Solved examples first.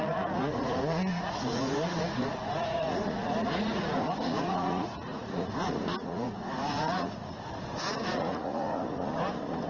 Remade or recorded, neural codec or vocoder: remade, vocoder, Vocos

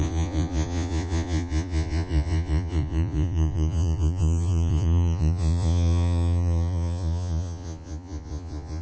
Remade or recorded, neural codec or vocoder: remade, vocoder, Vocos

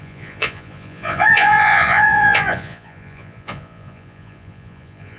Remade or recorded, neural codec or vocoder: remade, vocoder, Vocos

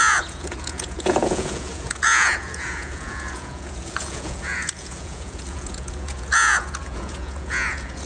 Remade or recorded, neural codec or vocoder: remade, vocoder, Vocos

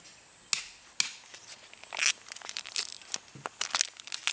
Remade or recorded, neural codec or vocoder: recorded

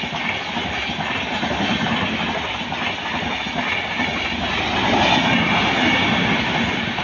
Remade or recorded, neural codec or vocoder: recorded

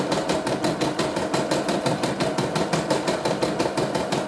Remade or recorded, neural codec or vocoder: recorded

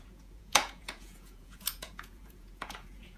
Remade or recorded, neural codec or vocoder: remade, vocoder, Vocos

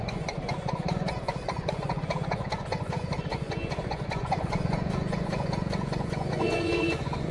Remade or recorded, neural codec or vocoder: remade, vocoder, Vocos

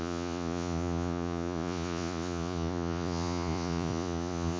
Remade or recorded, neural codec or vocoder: remade, vocoder, Vocos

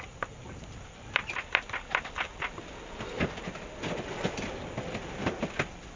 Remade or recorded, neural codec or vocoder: recorded